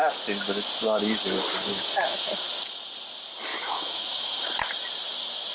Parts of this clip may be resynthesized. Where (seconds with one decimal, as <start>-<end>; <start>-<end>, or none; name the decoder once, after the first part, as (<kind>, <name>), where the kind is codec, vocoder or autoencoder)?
1.6-2.3 (autoencoder, DAC-VAE); 3.5-4.4